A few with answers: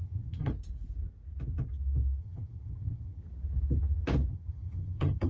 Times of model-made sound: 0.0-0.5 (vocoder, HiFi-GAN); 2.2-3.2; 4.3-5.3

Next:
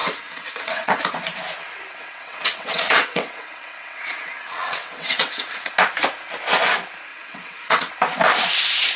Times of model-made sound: 0.0-1.0 (vocoder, WaveNeXt); 1.9-5.7; 7.1-7.9

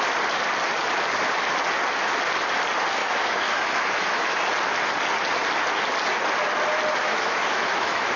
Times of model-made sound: 3.0-4.4 (autoencoder, DAC-VAE); 7.0-8.2

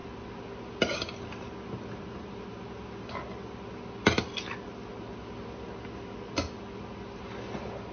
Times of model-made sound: none

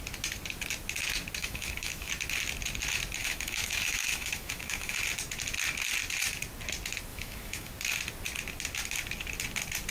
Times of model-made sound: 1.4-2.1 (autoencoder, DAC-VAE); 3.2-5.0; 7.1-7.7

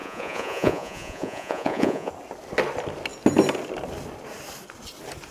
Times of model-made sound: 0.0-2.1 (vocoder, Vocos)

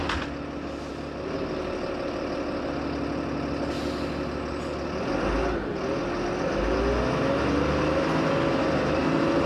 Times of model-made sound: none